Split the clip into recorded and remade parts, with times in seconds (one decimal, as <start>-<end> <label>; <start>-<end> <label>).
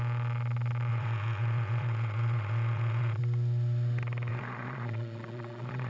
0.0-0.9 recorded; 0.9-3.2 remade; 3.2-4.3 recorded; 4.3-5.9 remade